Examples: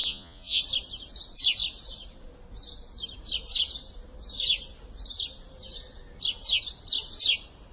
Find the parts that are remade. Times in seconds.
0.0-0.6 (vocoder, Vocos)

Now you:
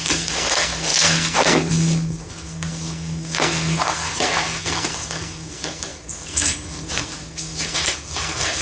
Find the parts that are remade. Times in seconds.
0.0-8.6 (codec, SNAC)

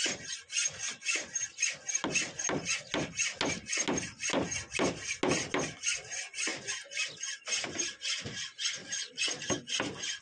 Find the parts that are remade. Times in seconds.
8.8-9.4 (vocoder, Vocos)

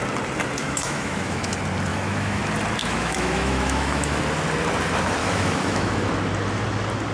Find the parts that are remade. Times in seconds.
0.6-1.5 (autoencoder, DAC-VAE); 1.9-2.4; 2.8-4.2; 5.2-6.1